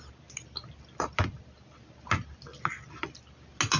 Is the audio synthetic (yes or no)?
no